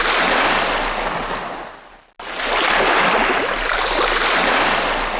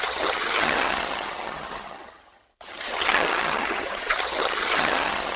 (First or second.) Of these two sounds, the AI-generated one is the second